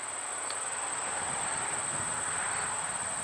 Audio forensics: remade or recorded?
recorded